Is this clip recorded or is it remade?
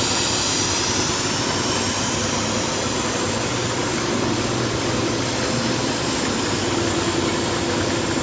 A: recorded